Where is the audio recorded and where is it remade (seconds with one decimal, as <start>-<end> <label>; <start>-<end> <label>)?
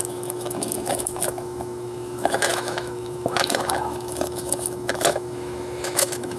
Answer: 0.0-6.4 remade